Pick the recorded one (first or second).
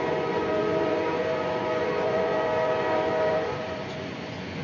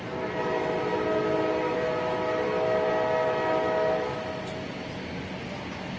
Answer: second